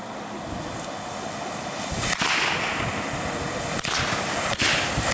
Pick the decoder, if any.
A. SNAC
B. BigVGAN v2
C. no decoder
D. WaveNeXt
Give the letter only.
C